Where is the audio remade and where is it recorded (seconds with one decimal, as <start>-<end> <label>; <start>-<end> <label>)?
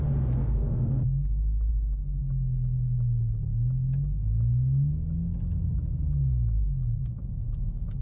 0.0-0.4 recorded; 0.4-1.7 remade; 1.7-8.0 recorded